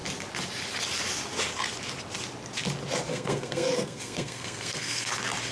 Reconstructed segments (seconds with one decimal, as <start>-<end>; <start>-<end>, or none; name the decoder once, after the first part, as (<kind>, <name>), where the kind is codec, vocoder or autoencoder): 3.1-5.1 (codec, SNAC)